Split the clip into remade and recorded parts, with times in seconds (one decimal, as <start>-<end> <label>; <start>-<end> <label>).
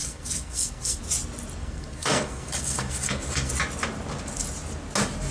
0.0-1.0 remade; 1.0-1.6 recorded; 1.6-3.5 remade; 3.5-5.3 recorded